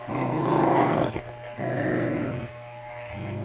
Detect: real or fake fake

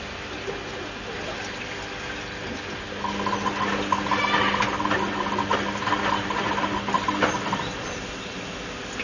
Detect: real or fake real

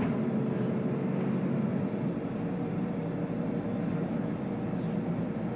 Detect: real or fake fake